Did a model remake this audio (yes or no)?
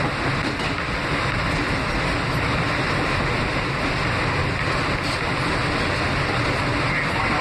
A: no